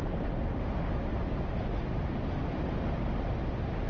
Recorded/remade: recorded